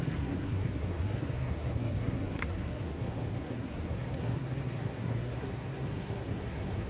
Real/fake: fake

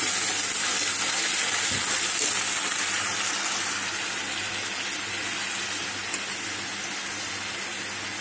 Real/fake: real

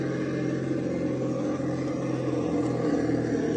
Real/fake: real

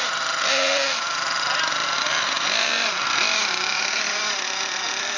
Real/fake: real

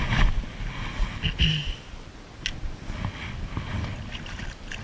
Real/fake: real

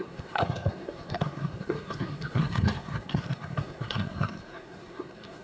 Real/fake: fake